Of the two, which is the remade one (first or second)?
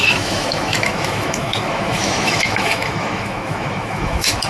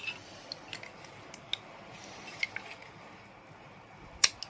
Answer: first